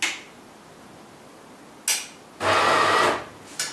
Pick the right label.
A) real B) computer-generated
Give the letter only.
A